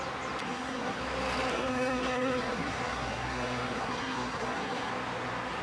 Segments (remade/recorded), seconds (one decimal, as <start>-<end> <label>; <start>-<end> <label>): 0.0-0.4 recorded; 0.4-1.0 remade; 1.0-1.5 recorded; 1.5-4.9 remade; 4.9-5.6 recorded